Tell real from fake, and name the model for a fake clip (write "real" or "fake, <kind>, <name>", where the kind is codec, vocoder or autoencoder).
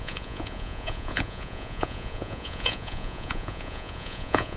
fake, vocoder, Vocos